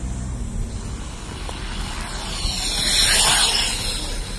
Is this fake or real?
real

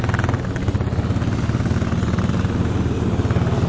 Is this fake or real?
real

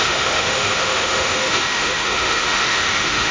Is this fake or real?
fake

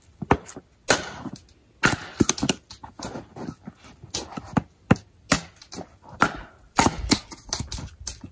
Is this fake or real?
real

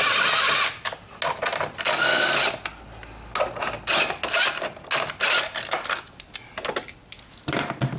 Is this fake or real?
real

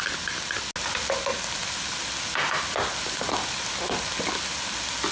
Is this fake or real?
real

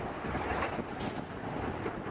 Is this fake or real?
real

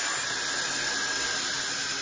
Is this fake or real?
real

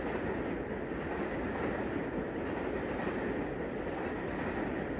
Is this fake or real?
real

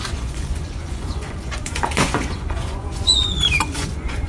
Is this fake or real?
fake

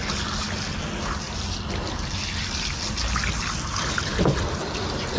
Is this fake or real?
real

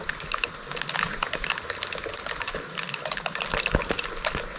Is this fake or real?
real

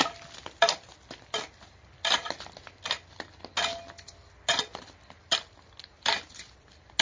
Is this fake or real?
real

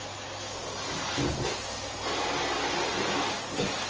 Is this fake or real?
real